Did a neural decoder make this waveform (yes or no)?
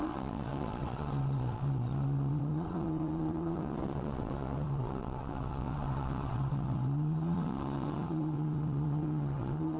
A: yes